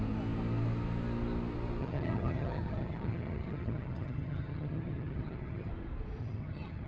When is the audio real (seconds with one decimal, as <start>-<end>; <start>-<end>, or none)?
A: 0.0-1.8; 5.7-6.2